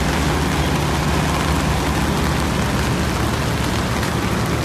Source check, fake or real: real